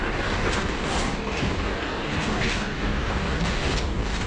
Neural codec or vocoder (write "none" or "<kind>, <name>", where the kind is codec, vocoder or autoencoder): codec, DAC